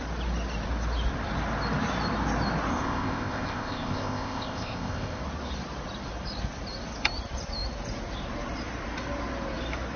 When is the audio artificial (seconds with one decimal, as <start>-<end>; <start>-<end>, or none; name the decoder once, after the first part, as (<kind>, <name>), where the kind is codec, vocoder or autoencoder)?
2.7-5.2 (codec, ZipCodec)